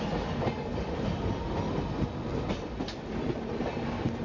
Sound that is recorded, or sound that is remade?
recorded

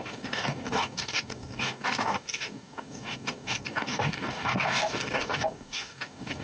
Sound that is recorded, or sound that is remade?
remade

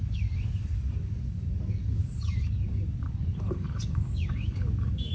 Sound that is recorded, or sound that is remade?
remade